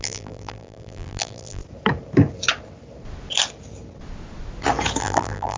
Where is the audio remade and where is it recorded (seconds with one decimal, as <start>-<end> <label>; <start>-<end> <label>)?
0.0-1.6 remade; 1.6-5.0 recorded; 5.0-5.6 remade